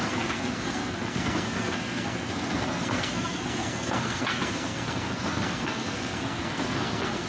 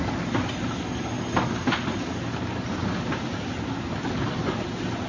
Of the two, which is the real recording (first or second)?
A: second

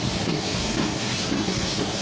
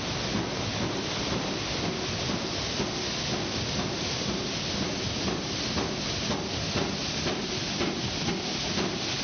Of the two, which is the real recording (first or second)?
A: second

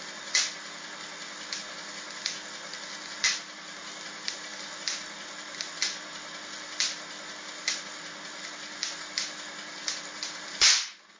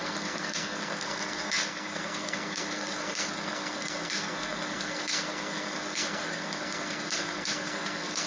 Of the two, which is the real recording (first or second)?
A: first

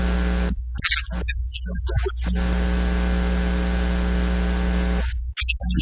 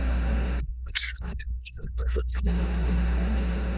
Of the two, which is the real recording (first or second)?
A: first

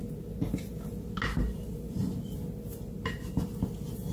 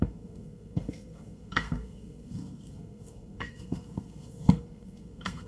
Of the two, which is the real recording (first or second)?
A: first